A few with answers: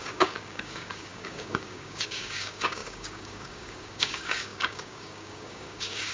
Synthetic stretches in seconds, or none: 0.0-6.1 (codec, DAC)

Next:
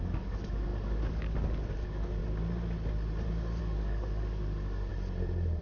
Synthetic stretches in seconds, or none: 0.0-2.2 (codec, DAC); 3.6-4.9

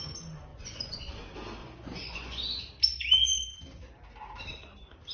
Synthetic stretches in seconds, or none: 0.5-1.2 (vocoder, Vocos); 1.6-2.7

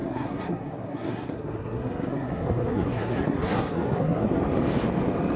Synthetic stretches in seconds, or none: 0.0-4.4 (codec, SNAC)

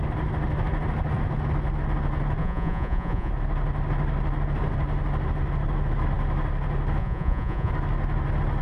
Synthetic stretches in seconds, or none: 2.4-3.3 (vocoder, Vocos); 7.0-7.7

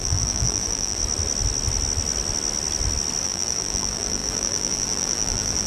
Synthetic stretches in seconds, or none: 0.0-1.0 (vocoder, BigVGAN v2); 3.2-5.7

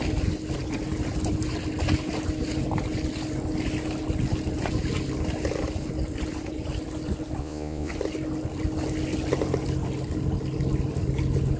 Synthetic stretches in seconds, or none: 7.4-7.9 (vocoder, Vocos)